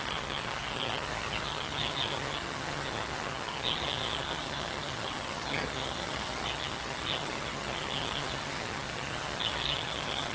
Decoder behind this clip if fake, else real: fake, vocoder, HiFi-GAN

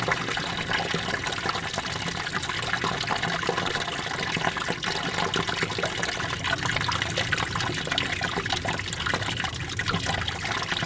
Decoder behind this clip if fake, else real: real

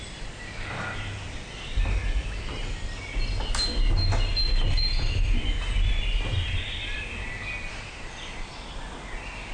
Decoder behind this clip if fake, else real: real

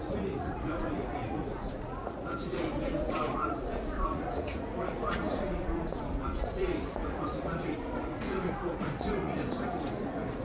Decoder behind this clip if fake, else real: fake, vocoder, Vocos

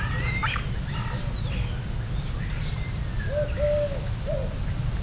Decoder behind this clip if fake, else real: real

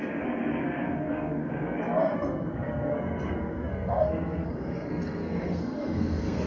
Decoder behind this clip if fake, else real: fake, codec, SNAC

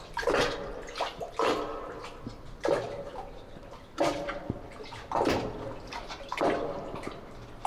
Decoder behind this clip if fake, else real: real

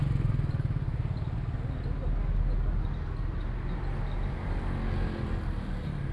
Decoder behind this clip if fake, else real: real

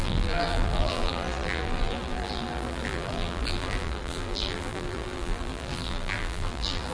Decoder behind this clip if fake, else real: fake, vocoder, BigVGAN v2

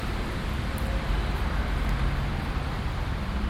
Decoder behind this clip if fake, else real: real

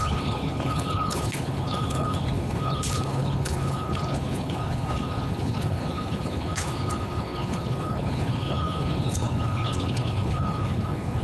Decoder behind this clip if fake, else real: fake, codec, HILCodec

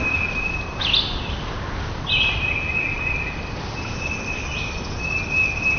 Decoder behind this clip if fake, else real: real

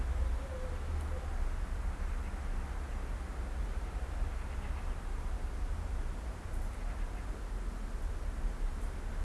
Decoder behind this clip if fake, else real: real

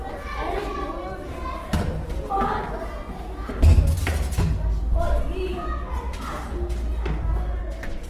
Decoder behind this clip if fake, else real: real